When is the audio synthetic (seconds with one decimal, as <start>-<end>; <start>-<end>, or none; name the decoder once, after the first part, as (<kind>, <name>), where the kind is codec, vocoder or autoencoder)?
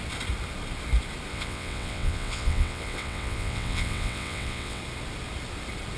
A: 1.3-4.8 (vocoder, WaveNeXt)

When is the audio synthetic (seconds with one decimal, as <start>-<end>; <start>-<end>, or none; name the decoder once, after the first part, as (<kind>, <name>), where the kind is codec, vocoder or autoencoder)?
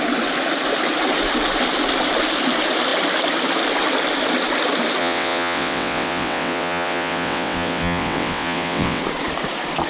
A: 5.0-9.0 (vocoder, WaveNeXt)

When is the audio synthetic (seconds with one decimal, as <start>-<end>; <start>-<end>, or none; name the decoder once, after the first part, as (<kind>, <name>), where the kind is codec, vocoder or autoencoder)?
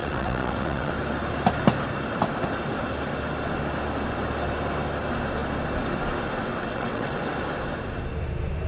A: 0.0-0.9 (vocoder, WaveNeXt); 6.5-7.2